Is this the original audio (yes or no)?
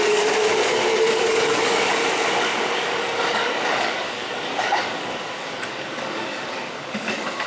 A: no